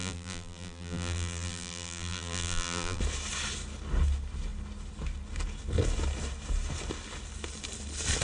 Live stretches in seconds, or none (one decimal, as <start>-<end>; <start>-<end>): 3.0-8.2